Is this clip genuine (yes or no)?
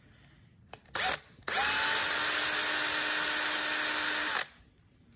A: yes